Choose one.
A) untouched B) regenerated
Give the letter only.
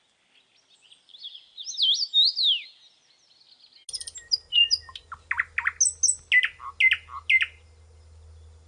A